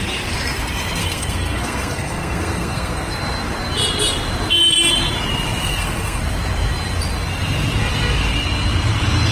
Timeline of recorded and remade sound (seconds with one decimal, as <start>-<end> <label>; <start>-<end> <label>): 0.0-1.0 recorded; 1.0-3.1 remade; 3.1-5.6 recorded; 5.6-6.2 remade; 6.2-9.3 recorded